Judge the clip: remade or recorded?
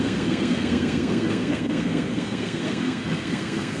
remade